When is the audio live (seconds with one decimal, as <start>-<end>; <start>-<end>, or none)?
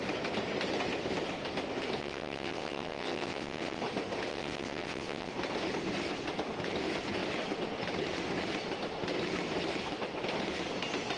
0.0-2.0; 3.8-4.3; 5.3-11.2